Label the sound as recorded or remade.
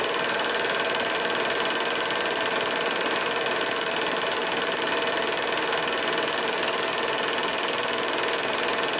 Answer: recorded